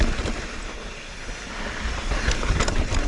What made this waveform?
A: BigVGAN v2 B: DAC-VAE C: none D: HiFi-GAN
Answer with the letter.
A